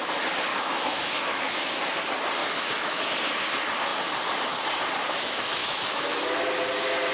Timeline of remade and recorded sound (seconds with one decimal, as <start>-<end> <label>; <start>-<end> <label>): 0.0-0.5 recorded; 0.5-1.7 remade; 1.7-2.4 recorded; 2.4-3.1 remade; 3.1-5.6 recorded; 5.6-6.2 remade; 6.2-7.1 recorded